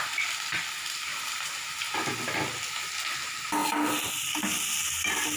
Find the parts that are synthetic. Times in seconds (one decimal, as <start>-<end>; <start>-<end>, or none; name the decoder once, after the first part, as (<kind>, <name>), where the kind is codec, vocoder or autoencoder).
1.1-1.7 (vocoder, BigVGAN v2)